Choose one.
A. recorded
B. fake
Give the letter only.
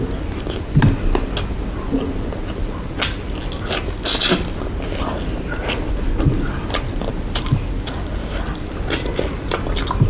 A